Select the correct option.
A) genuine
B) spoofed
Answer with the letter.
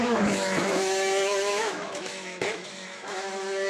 B